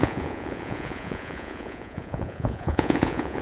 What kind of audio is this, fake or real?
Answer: fake